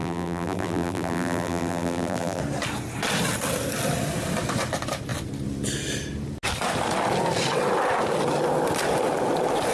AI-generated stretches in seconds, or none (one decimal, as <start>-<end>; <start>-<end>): 0.0-2.4

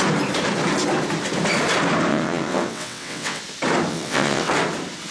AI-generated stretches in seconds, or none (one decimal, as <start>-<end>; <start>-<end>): 2.1-3.4; 3.9-4.5

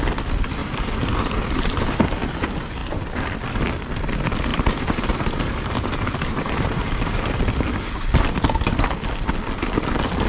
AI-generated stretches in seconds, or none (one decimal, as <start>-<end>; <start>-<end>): 0.6-2.1; 4.5-7.4

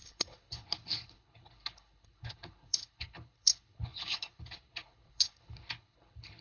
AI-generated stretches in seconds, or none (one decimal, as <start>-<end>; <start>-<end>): 0.0-6.4

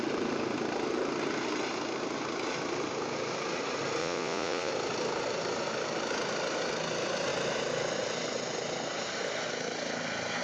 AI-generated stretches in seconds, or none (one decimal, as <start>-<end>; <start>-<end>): 4.0-4.7